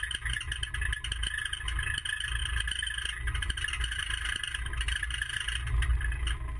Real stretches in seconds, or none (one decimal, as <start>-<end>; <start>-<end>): 0.0-6.6